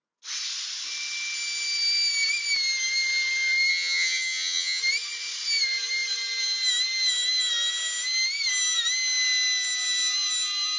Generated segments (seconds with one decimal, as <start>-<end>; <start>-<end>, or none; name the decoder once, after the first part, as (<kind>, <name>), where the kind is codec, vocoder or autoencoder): 3.7-4.8 (vocoder, HiFi-GAN)